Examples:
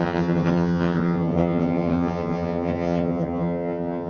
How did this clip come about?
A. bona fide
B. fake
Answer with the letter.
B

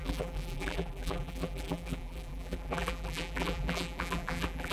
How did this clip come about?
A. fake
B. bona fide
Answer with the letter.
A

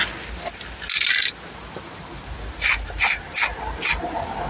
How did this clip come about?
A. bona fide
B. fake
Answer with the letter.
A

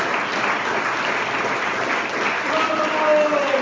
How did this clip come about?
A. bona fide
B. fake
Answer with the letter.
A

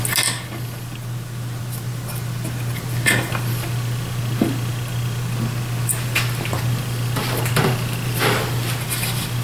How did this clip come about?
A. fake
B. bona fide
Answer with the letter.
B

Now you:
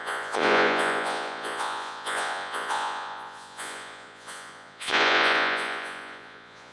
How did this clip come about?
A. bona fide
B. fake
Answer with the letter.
B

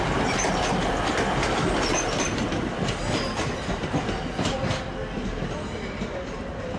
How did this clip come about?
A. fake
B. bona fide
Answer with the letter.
B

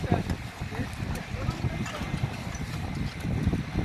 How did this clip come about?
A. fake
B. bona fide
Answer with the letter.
B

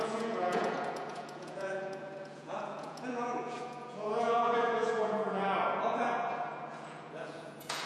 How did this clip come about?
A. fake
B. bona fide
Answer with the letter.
A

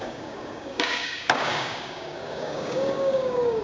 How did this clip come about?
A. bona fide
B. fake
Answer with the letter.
B